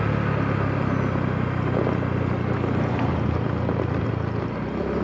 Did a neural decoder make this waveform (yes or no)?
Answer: no